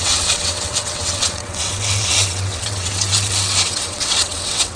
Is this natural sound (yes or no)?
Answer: no